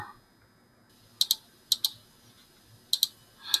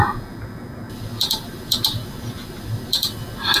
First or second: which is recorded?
first